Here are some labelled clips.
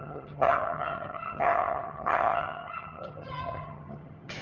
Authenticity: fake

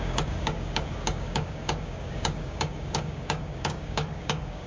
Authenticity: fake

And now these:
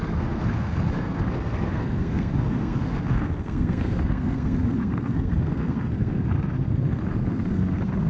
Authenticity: fake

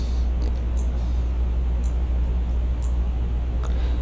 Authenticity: real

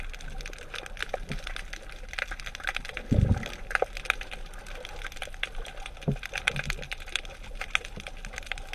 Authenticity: real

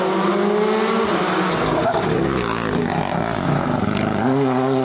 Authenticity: real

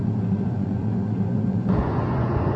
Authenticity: fake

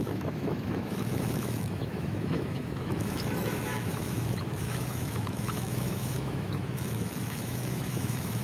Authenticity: fake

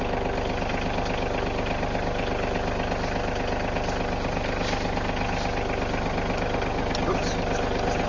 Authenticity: real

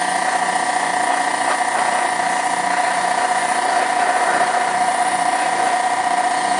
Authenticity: fake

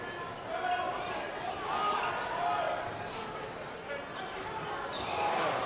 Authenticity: real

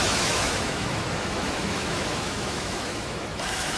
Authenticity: fake